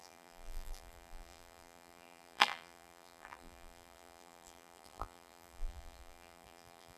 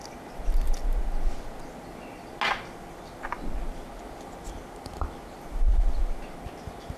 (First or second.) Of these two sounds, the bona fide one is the second